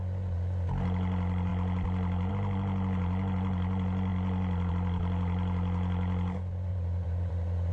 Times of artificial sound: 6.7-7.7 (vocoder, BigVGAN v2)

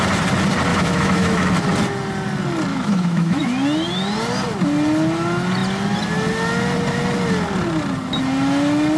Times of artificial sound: 0.7-1.5 (autoencoder, DAC-VAE); 2.7-3.4

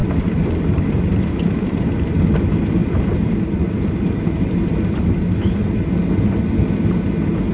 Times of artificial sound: 0.0-1.9 (vocoder, BigVGAN v2); 2.8-5.5

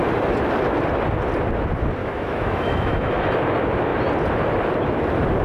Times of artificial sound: 2.0-3.3 (autoencoder, DAC-VAE)

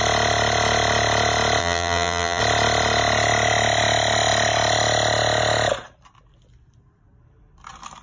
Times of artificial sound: 1.6-2.4 (vocoder, BigVGAN v2)

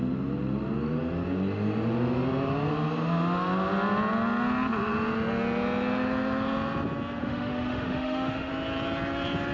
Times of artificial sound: 7.2-8.5 (autoencoder, DAC-VAE)

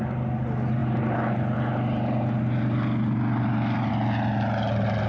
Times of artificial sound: none

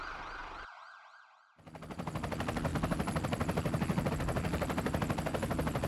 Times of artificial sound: 2.7-4.1 (vocoder, BigVGAN v2); 4.5-5.0